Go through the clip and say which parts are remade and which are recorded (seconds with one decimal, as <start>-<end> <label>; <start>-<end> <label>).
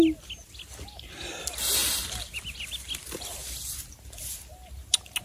0.0-5.2 recorded